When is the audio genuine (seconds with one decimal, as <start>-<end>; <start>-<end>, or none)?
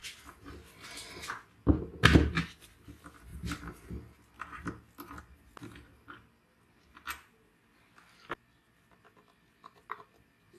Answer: 0.0-10.6